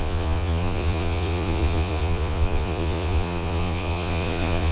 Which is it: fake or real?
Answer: fake